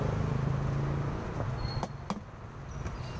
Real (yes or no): yes